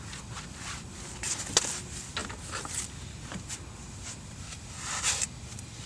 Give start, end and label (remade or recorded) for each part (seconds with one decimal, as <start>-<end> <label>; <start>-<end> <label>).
0.0-5.9 recorded